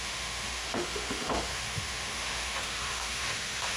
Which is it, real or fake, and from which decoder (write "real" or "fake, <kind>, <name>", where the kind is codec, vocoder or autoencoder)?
fake, autoencoder, DAC-VAE